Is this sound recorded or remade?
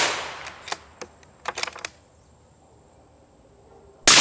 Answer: recorded